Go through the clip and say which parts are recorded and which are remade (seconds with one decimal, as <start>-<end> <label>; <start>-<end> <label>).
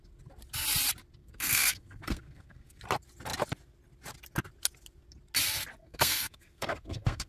0.0-1.2 recorded; 1.2-2.8 remade; 2.8-5.8 recorded; 5.8-7.3 remade